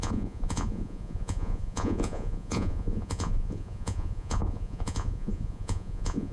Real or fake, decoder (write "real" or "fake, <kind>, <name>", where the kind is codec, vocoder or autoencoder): fake, vocoder, Vocos